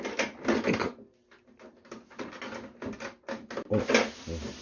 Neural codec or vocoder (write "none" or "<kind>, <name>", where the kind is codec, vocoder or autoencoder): none